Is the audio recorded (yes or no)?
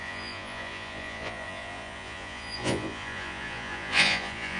no